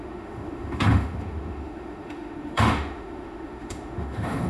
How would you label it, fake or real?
fake